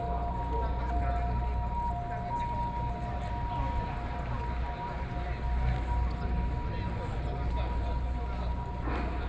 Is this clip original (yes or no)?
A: yes